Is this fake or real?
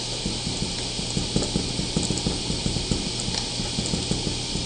real